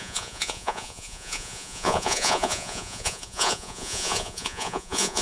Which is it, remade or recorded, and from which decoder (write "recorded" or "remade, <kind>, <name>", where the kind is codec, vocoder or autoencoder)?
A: remade, vocoder, Vocos